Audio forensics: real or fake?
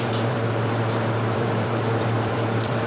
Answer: fake